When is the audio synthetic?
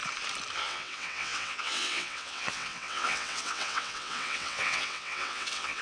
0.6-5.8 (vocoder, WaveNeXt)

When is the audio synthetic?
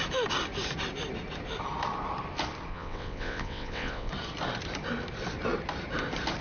2.7-4.1 (vocoder, WaveNeXt)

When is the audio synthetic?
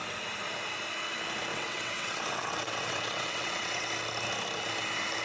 1.5-3.9 (vocoder, WaveNeXt)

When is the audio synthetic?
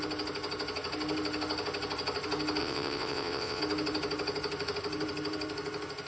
2.6-3.6 (vocoder, WaveNeXt)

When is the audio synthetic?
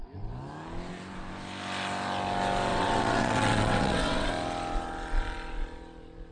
2.7-4.3 (vocoder, WaveNeXt)